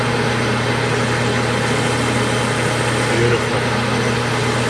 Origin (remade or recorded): recorded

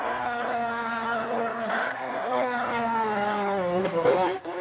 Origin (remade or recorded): remade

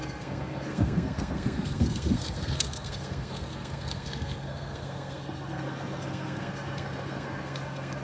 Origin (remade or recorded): remade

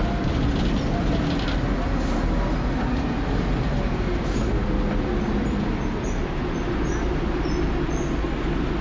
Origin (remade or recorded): recorded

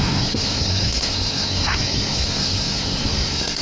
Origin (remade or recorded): remade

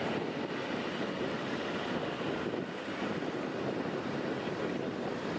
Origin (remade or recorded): recorded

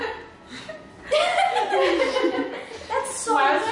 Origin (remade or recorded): recorded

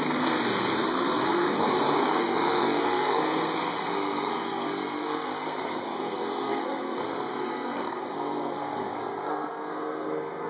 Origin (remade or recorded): remade